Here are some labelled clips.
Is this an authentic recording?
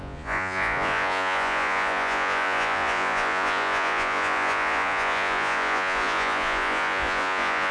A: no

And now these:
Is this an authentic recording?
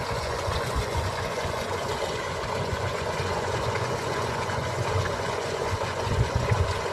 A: no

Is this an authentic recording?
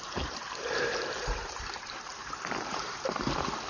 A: no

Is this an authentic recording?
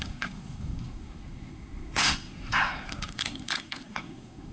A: no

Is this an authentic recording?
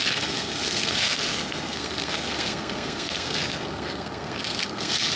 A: no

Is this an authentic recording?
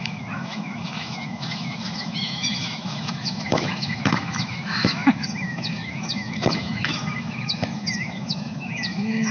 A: no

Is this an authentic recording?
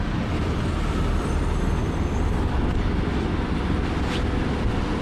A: yes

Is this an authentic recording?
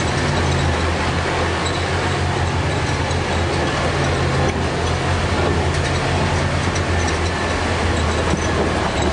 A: yes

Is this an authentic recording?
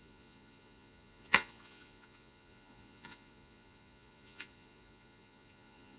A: no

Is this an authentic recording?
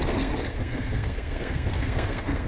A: no